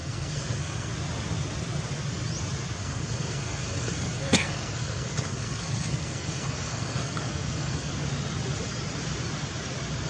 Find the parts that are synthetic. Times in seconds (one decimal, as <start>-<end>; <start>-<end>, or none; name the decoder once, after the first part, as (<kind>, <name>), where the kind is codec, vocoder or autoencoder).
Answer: 0.0-0.9 (codec, SNAC); 2.8-7.9

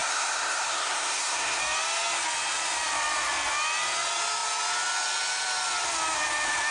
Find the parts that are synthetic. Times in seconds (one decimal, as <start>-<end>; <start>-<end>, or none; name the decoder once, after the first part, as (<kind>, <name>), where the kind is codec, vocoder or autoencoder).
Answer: 0.0-1.6 (codec, SNAC)

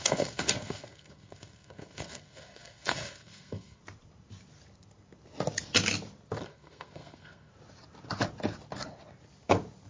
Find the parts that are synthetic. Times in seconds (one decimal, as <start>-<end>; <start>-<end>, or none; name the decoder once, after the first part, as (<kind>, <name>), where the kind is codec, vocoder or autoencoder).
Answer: 0.0-3.8 (codec, SNAC); 6.4-7.5

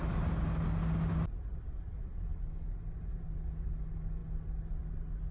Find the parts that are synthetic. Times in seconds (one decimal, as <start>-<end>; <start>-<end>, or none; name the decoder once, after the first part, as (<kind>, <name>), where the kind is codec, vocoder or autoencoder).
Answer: none

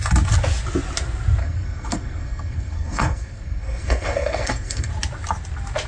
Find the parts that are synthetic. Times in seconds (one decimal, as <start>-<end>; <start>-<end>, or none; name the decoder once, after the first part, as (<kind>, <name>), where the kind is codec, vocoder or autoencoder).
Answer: 1.4-4.9 (codec, SNAC)